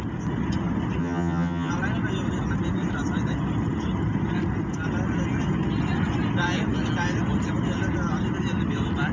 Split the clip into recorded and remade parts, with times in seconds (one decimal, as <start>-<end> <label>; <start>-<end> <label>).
0.0-1.0 recorded; 1.0-1.7 remade; 1.7-9.1 recorded